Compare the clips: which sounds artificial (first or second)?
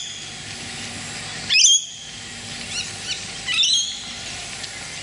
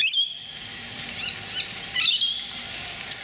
second